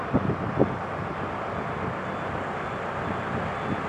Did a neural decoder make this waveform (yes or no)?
no